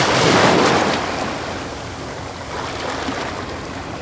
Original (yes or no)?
yes